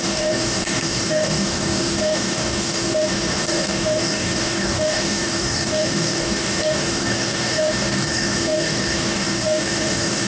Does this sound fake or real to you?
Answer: fake